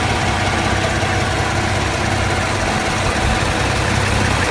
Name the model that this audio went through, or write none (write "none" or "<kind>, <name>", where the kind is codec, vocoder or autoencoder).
none